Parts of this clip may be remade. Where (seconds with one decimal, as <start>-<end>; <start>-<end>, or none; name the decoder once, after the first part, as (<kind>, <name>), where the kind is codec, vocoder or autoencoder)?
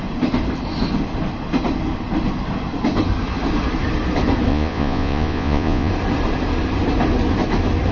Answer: 4.5-5.9 (vocoder, Vocos)